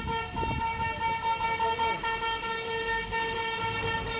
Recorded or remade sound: recorded